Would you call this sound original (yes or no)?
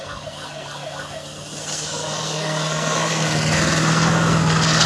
no